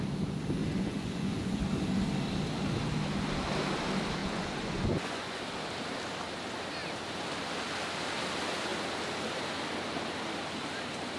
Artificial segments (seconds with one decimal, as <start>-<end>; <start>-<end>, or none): 0.6-1.6; 4.2-5.4